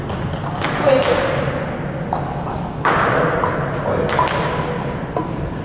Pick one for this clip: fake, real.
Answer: real